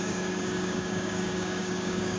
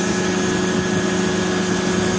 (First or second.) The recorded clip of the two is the second